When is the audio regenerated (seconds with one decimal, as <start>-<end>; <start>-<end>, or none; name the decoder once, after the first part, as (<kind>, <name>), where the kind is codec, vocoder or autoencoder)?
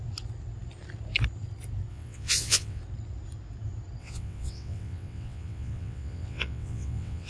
1.9-2.8 (vocoder, WaveNeXt); 4.0-7.3